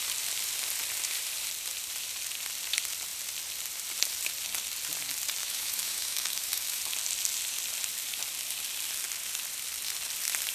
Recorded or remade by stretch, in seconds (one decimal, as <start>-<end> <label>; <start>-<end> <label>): 0.0-5.4 recorded; 5.4-6.8 remade; 6.8-10.5 recorded